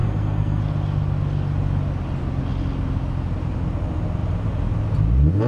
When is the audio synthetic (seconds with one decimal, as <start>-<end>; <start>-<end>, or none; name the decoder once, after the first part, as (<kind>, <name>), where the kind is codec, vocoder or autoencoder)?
0.0-0.6 (codec, SNAC)